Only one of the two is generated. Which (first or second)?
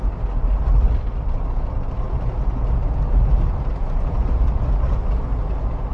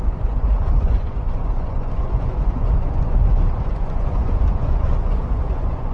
second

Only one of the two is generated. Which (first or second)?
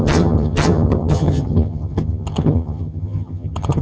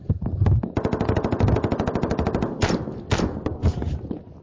first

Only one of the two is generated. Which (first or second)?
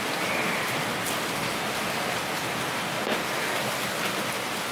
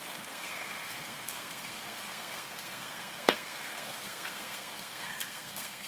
second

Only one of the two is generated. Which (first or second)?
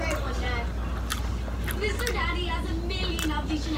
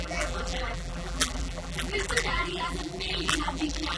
second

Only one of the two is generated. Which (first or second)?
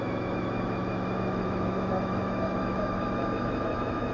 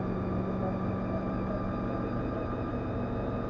first